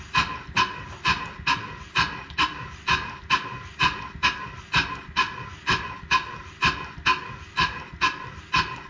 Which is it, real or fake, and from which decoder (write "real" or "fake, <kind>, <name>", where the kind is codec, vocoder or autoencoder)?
real